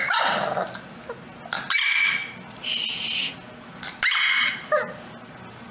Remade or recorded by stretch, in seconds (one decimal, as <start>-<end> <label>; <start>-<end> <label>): 0.0-5.7 recorded